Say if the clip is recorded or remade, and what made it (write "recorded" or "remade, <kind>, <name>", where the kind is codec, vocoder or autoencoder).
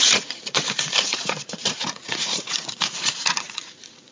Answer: remade, vocoder, Vocos